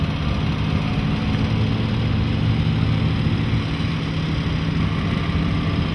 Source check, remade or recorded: recorded